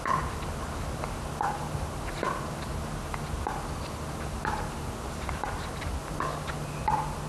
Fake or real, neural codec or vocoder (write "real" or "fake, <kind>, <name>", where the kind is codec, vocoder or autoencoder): real